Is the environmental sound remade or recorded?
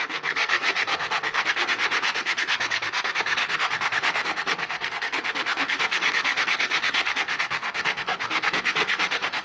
remade